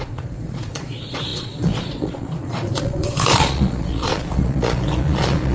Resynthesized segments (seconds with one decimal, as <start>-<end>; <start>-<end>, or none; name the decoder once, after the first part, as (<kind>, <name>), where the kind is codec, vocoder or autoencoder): 0.0-5.5 (vocoder, Vocos)